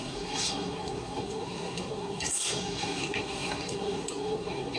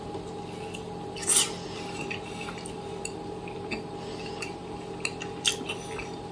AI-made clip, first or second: first